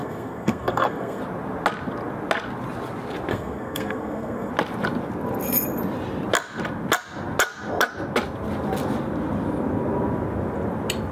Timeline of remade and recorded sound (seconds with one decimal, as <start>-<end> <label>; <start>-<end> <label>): 0.0-1.2 remade; 1.2-3.3 recorded; 3.3-4.5 remade; 4.5-11.1 recorded